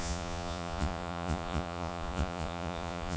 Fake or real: fake